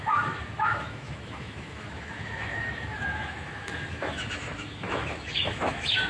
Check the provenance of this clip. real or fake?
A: fake